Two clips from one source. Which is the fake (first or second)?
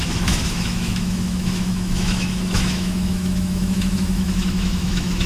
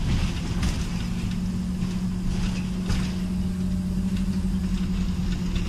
first